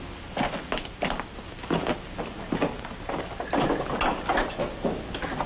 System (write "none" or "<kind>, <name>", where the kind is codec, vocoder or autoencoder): none